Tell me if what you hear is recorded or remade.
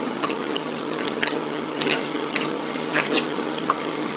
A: remade